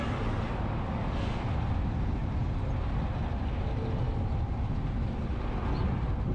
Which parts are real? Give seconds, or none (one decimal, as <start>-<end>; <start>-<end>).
0.0-6.3

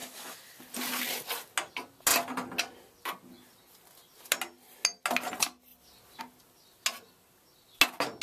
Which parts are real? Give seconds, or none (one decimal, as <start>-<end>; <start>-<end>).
0.6-8.2

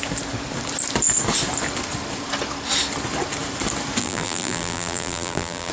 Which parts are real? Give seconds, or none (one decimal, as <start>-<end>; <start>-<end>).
0.0-4.0

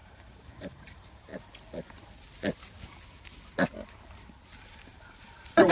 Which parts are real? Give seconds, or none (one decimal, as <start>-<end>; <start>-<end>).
1.3-4.6